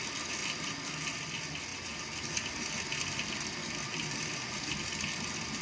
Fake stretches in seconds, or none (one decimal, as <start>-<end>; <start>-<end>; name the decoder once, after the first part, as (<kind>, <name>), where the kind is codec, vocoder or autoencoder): 0.4-0.9 (vocoder, BigVGAN v2); 3.6-4.4

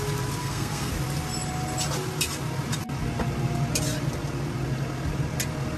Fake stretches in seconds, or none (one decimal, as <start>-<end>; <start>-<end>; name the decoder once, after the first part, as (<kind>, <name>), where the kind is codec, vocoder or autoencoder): 0.4-0.9 (codec, SNAC)

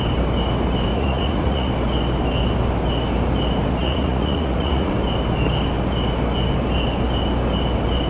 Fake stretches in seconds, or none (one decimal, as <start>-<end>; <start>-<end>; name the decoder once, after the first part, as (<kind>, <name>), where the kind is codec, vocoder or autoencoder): 0.9-1.7 (vocoder, Vocos); 3.8-4.9

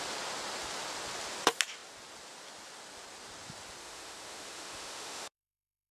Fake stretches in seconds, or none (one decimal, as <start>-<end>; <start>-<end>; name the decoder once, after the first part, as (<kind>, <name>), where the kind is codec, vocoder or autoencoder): 3.8-5.9 (autoencoder, DAC-VAE)

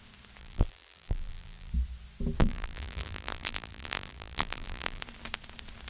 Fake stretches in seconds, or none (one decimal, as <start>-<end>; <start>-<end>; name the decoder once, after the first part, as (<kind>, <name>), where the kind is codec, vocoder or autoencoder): 0.4-1.7 (vocoder, BigVGAN v2); 2.4-5.0

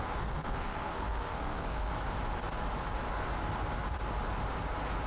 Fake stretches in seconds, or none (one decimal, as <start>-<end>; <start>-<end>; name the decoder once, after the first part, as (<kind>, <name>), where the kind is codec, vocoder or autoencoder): 0.0-1.9 (codec, SNAC)

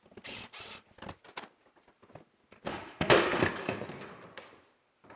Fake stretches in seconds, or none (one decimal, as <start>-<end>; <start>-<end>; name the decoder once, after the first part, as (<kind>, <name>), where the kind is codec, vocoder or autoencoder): 2.7-3.4 (autoencoder, DAC-VAE)

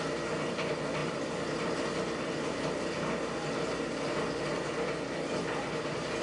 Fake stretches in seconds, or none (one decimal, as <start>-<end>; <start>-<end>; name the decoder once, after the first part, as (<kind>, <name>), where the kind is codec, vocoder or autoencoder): none